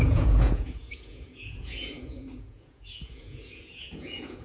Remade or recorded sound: remade